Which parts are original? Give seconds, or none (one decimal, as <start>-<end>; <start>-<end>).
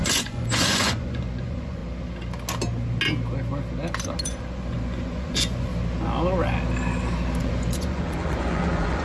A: 1.8-4.2; 5.7-7.4